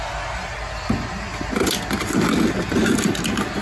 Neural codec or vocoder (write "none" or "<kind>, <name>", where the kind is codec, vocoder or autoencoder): none